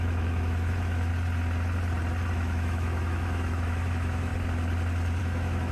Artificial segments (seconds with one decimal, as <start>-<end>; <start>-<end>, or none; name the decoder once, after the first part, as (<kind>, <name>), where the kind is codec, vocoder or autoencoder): 0.0-1.1 (autoencoder, DAC-VAE); 2.3-4.3; 5.2-5.7